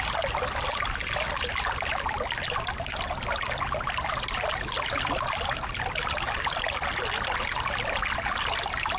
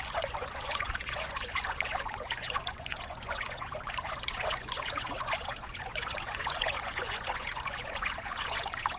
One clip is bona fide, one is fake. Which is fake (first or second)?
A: second